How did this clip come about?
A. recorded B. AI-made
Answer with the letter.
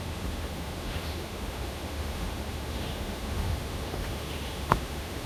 B